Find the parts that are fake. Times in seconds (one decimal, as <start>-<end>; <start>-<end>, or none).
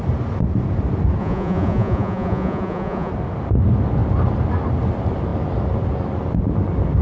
1.2-3.1